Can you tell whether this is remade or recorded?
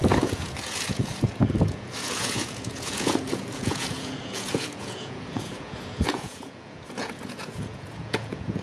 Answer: remade